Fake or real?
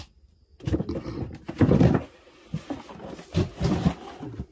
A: real